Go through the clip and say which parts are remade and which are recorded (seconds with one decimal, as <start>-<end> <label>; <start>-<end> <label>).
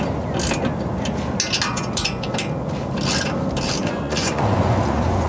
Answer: 0.0-1.7 recorded; 1.7-2.3 remade; 2.3-3.8 recorded; 3.8-5.3 remade